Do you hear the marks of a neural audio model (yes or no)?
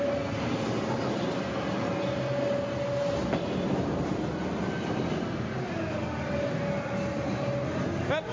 no